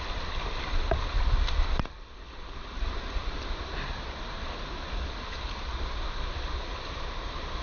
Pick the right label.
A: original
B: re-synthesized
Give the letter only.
B